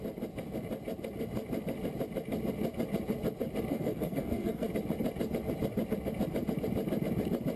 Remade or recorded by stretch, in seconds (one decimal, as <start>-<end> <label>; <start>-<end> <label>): 0.0-3.7 recorded; 3.7-4.7 remade; 4.7-7.6 recorded